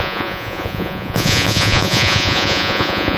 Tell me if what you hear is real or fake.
fake